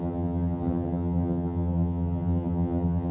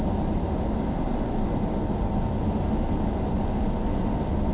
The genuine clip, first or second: second